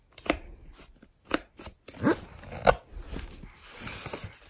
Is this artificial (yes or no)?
no